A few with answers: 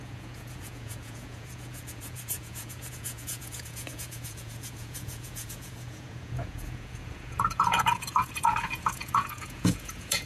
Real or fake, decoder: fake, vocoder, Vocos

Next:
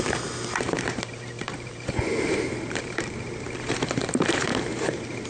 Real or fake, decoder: fake, vocoder, BigVGAN v2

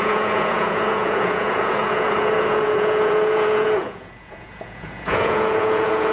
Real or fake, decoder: fake, vocoder, Vocos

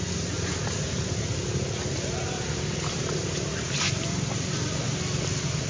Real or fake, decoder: real